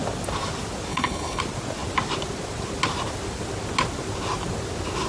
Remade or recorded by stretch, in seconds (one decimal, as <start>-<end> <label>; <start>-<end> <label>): 0.0-0.9 recorded; 0.9-1.4 remade; 1.4-5.1 recorded